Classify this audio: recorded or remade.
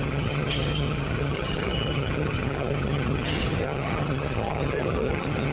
remade